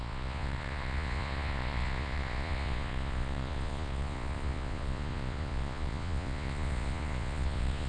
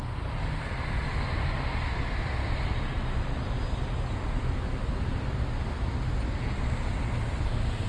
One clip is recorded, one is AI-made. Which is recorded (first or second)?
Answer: second